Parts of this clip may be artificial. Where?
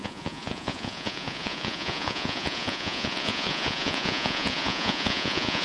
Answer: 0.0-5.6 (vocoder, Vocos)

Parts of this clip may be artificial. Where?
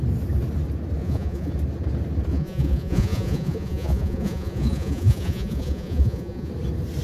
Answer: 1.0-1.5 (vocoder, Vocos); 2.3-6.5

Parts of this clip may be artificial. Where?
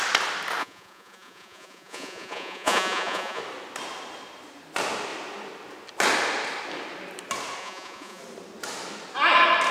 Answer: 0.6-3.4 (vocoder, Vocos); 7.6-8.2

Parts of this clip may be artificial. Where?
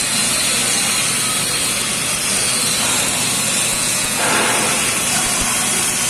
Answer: 3.7-4.2 (vocoder, Vocos)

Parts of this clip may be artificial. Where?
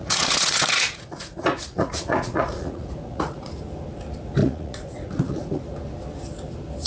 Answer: 0.0-3.5 (vocoder, Vocos); 4.4-5.6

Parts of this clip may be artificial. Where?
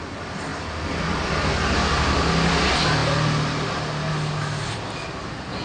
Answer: none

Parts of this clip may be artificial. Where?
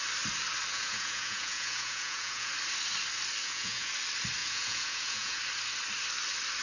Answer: 0.7-2.5 (vocoder, Vocos); 3.4-3.9; 4.4-5.4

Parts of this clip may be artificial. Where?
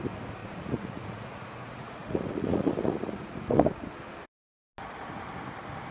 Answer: 0.4-3.9 (vocoder, Vocos)